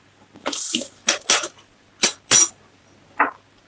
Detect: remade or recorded recorded